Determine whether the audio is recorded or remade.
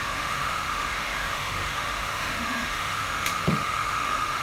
remade